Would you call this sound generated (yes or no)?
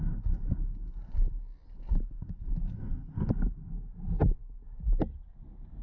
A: no